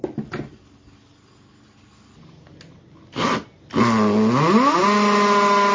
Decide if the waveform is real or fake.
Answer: real